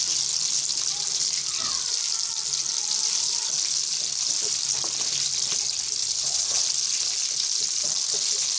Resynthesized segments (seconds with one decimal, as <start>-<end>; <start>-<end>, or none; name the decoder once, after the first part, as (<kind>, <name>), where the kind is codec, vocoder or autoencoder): 6.0-6.6 (codec, HILCodec)